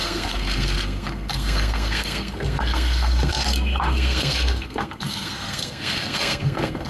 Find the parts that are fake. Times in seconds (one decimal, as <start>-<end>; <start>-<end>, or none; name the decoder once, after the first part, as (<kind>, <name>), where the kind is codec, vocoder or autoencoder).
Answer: 0.0-6.9 (codec, SNAC)